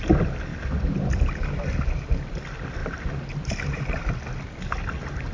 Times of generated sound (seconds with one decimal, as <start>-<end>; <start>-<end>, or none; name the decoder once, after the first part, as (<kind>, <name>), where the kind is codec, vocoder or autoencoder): none